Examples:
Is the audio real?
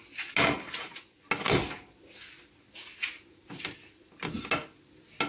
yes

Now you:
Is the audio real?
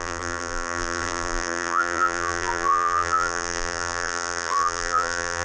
no